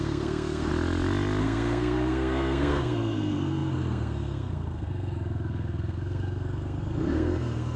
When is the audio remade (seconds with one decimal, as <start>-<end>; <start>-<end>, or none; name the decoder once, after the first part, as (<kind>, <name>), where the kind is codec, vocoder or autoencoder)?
0.0-0.7 (codec, SNAC); 1.4-7.8